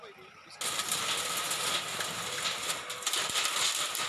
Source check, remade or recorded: recorded